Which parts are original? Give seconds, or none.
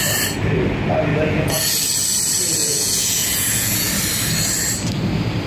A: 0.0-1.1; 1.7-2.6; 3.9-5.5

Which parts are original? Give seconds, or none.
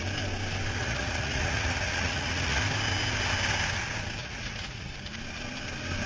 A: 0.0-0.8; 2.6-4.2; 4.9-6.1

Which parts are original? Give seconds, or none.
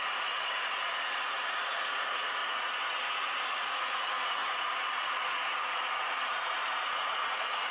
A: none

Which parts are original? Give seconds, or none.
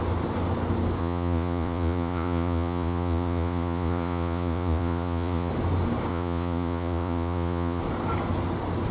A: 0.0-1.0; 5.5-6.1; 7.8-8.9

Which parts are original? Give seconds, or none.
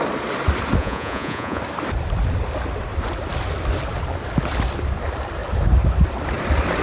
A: 0.0-0.8; 1.6-6.8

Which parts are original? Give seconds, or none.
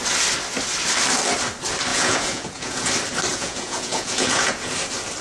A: 0.0-1.9; 2.9-3.3; 4.7-5.2